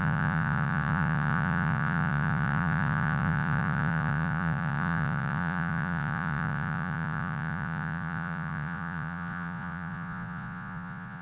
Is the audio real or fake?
fake